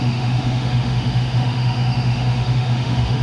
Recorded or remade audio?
remade